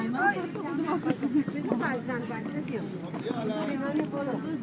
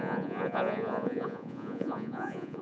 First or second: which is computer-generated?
second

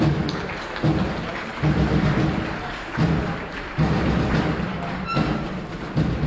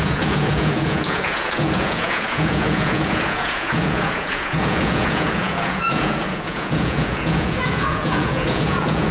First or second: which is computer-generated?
second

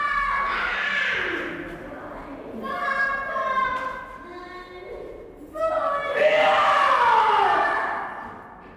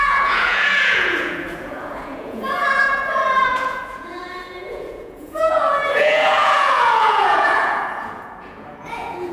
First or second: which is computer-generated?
second